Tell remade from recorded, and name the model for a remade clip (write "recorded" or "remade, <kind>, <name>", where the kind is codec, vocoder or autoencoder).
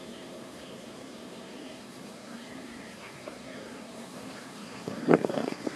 remade, codec, SNAC